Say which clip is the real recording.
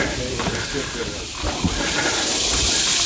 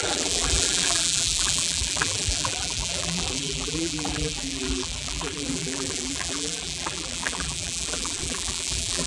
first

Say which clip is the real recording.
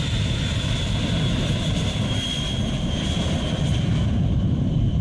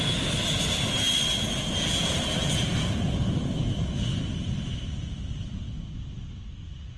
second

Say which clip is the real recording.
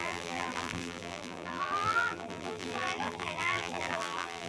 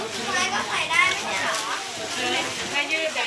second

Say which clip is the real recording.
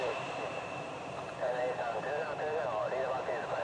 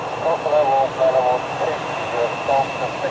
second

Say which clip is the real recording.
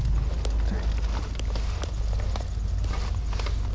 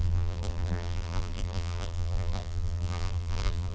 first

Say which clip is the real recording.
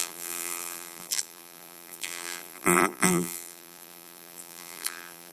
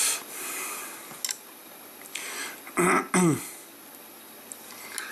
second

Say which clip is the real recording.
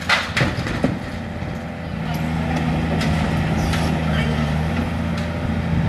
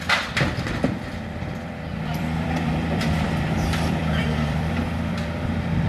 first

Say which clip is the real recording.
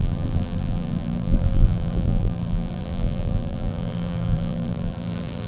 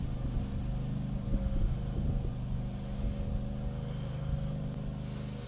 second